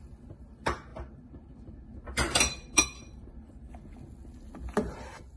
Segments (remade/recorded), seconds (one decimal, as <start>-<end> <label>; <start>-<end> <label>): 0.0-5.4 recorded